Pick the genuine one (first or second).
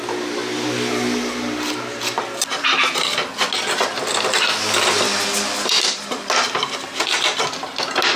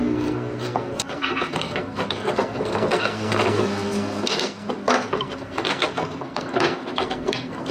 first